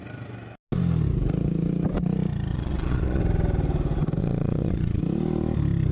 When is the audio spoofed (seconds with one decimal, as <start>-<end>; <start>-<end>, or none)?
2.5-3.2; 4.2-5.0